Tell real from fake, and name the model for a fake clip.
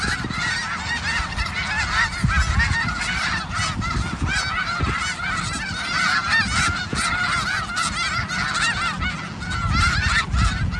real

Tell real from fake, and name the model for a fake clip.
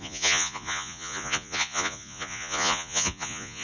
fake, vocoder, Vocos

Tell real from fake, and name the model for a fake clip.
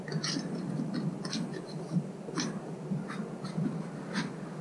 real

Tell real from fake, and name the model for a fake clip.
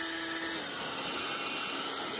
real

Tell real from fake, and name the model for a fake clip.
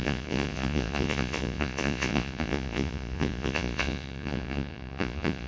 fake, vocoder, Vocos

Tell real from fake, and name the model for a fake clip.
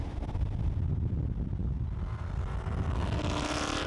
real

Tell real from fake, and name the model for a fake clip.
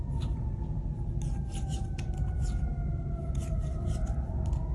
real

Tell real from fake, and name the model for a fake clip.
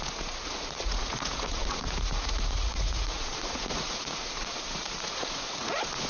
fake, vocoder, Vocos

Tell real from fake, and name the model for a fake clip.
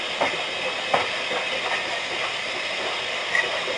real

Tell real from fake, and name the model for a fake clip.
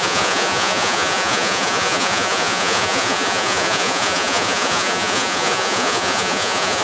fake, vocoder, Vocos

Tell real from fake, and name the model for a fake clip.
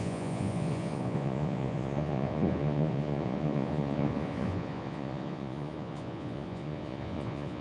fake, vocoder, Vocos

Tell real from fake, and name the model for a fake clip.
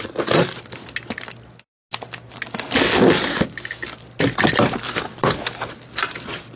real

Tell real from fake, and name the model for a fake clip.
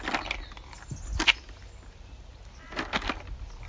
real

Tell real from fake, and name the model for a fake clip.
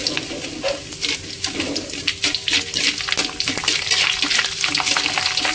real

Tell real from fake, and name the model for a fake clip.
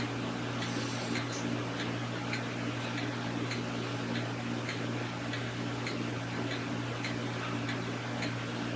real